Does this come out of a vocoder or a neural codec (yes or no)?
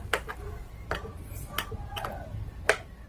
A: no